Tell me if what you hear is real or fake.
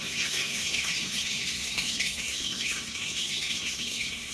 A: fake